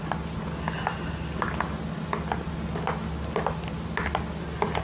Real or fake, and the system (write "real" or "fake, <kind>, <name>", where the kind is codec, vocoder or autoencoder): real